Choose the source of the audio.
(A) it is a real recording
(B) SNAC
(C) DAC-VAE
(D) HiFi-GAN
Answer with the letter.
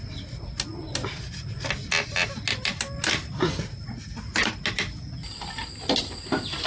A